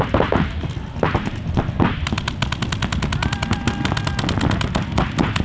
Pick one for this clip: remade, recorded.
recorded